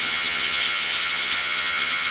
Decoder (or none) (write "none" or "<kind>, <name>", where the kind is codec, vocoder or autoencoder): vocoder, HiFi-GAN